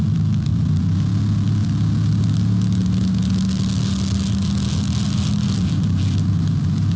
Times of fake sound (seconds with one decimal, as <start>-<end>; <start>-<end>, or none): none